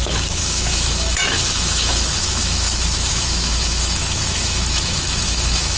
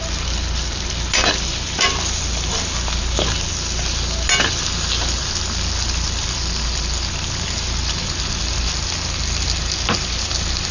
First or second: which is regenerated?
first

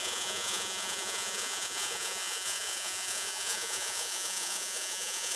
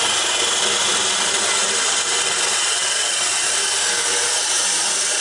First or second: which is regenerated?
first